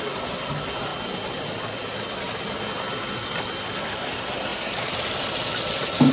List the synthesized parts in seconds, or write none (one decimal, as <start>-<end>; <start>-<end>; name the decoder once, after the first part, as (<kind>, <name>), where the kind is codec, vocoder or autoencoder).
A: 4.5-6.1 (vocoder, BigVGAN v2)